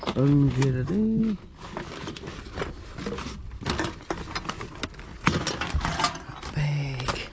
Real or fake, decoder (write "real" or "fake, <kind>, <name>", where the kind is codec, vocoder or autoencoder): real